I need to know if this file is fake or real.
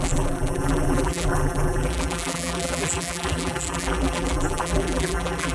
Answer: fake